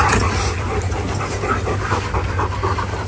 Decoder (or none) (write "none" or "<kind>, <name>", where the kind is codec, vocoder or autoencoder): none